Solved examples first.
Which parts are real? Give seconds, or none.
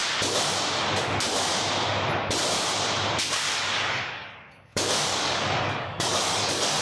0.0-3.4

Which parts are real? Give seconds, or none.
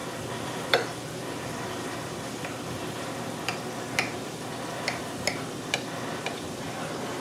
none